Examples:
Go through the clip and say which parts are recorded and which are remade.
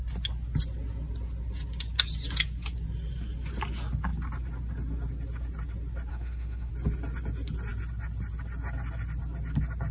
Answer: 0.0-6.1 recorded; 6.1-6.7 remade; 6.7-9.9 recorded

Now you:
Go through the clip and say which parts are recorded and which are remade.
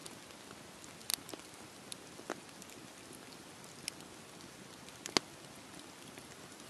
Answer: 0.0-6.7 recorded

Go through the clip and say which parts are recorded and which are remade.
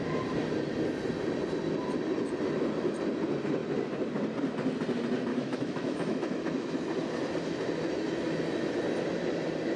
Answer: 0.0-5.3 recorded; 5.3-6.7 remade; 6.7-9.8 recorded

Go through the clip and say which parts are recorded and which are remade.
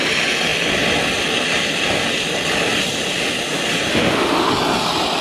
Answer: 0.0-3.9 recorded; 3.9-4.5 remade; 4.5-5.2 recorded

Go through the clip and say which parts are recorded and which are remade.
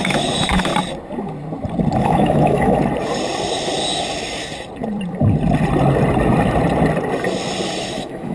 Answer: 0.0-0.7 remade; 0.7-2.0 recorded; 2.0-2.8 remade; 2.8-7.8 recorded; 7.8-8.3 remade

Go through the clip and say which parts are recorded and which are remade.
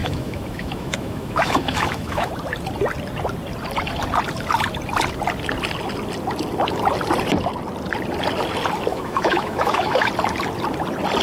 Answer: 0.0-2.3 remade; 2.3-8.9 recorded; 8.9-10.1 remade; 10.1-11.2 recorded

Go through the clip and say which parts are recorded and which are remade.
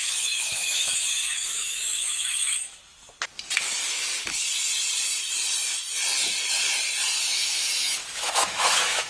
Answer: 0.0-2.8 remade; 2.8-7.3 recorded; 7.3-9.1 remade